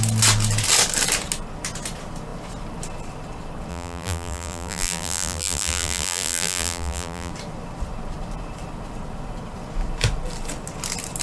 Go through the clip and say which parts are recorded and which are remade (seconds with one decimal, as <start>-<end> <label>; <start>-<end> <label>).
0.0-3.7 recorded; 3.7-7.3 remade; 7.3-11.2 recorded